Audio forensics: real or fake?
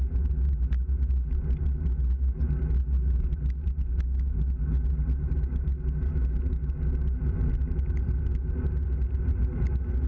real